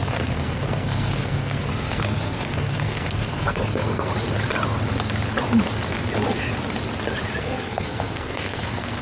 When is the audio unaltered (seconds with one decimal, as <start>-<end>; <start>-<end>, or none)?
4.1-7.4